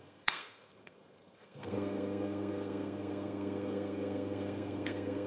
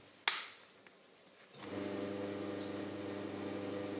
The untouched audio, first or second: second